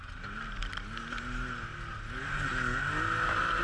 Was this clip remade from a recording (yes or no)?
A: no